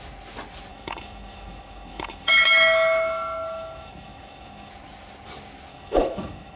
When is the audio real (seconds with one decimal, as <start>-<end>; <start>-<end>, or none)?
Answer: 0.0-0.7; 4.7-5.7